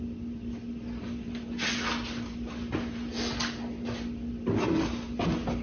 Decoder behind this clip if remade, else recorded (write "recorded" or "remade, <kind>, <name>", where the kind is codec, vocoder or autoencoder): recorded